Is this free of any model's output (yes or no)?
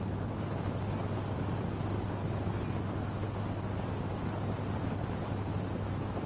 yes